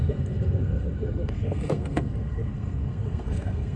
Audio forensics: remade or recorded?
remade